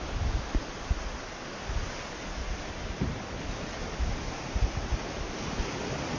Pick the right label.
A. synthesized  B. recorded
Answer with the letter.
B